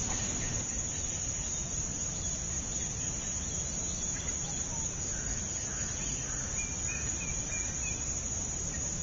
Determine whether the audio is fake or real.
real